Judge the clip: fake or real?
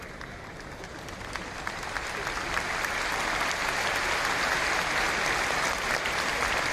real